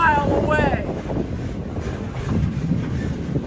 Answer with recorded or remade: recorded